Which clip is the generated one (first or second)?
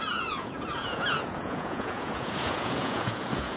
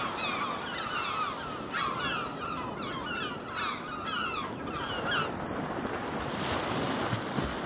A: first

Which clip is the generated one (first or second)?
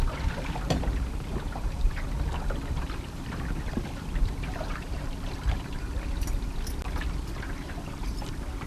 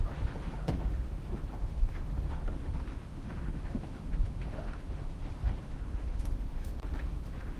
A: second